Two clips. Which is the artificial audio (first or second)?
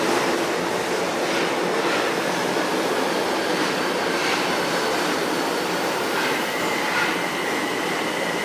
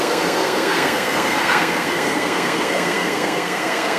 second